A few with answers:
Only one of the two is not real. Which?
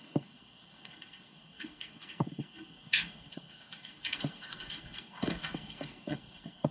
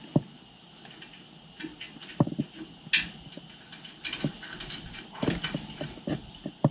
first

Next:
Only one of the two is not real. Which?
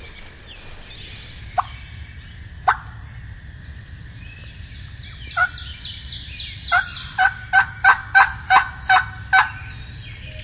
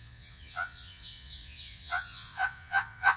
second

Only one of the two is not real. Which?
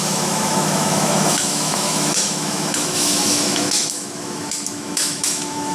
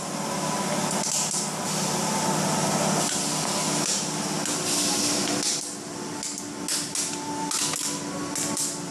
first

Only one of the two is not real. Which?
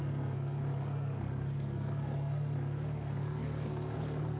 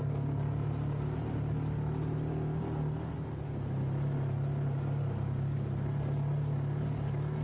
first